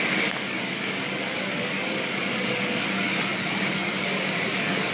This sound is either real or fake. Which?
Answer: fake